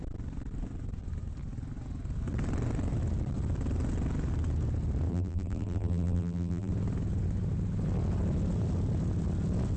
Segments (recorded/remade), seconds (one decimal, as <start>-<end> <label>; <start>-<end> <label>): 0.0-5.1 recorded; 5.1-6.7 remade; 6.7-9.8 recorded